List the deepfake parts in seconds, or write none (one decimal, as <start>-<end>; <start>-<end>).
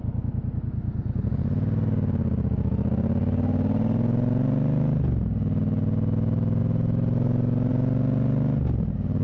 none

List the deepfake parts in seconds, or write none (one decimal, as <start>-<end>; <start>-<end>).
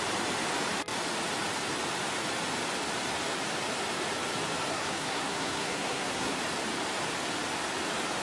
4.7-6.4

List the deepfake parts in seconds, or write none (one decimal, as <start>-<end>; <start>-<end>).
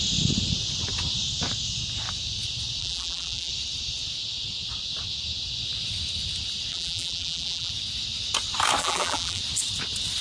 2.8-3.5; 6.7-7.7; 8.8-9.4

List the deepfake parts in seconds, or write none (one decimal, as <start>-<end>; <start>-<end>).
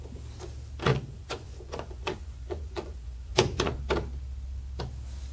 0.9-3.7